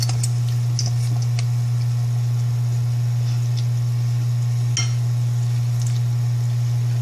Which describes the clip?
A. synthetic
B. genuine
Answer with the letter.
B